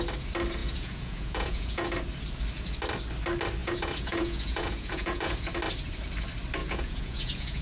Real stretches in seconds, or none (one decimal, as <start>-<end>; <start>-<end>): 0.0-0.6; 1.9-3.6; 5.5-6.6